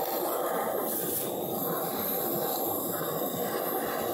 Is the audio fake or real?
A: real